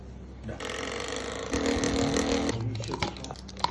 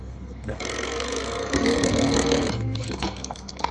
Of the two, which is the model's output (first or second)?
second